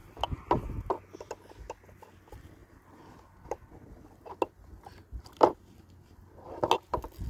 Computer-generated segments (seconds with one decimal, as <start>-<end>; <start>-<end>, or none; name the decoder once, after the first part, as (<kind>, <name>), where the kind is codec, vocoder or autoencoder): none